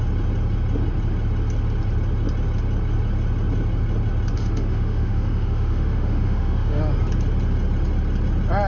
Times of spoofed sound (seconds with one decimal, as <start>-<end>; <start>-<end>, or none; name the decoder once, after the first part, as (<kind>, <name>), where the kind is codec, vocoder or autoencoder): 4.4-6.8 (autoencoder, DAC-VAE)